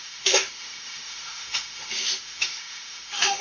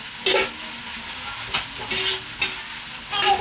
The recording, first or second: second